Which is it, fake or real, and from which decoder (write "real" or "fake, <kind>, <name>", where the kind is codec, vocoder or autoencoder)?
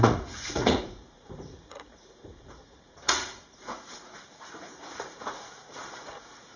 fake, vocoder, Vocos